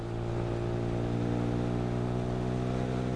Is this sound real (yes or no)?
yes